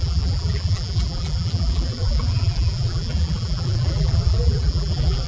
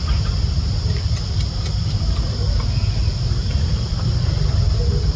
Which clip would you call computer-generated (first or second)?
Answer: first